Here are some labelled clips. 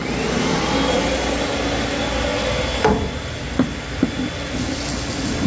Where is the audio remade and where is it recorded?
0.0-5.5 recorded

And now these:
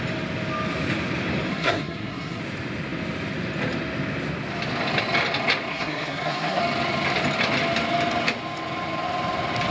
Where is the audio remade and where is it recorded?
0.0-1.5 recorded; 1.5-2.4 remade; 2.4-5.7 recorded; 5.7-6.6 remade; 6.6-9.7 recorded